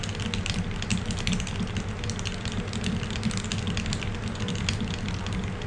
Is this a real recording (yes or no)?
yes